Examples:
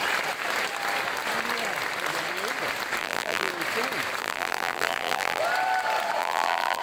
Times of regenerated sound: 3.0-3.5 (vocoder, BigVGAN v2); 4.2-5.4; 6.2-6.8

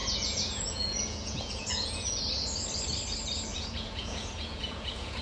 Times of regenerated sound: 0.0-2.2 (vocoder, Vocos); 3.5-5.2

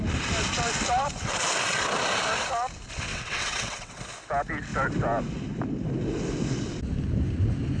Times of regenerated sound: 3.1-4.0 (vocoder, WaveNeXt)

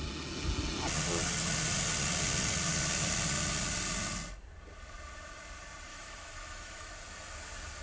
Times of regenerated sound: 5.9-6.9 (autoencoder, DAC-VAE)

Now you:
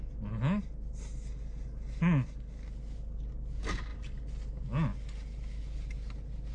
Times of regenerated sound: none

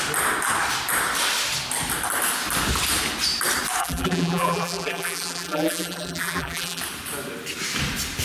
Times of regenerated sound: 3.8-6.8 (vocoder, BigVGAN v2)

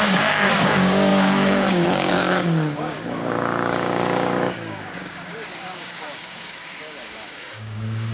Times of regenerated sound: 0.0-8.1 (codec, DAC)